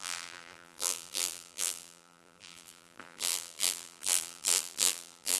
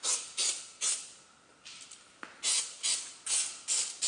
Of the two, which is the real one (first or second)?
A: second